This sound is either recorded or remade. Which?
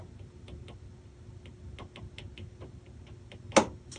recorded